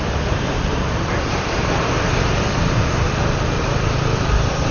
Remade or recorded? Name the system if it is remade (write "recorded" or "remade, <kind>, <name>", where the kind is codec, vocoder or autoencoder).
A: remade, vocoder, BigVGAN v2